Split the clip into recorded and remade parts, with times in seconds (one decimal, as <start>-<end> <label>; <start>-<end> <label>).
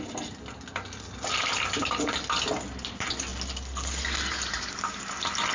0.0-5.5 recorded